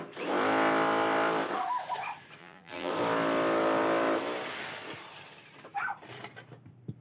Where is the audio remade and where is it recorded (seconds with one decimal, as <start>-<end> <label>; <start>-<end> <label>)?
0.0-2.4 recorded; 2.4-2.9 remade; 2.9-7.0 recorded